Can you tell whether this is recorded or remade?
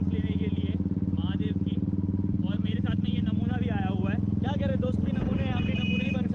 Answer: recorded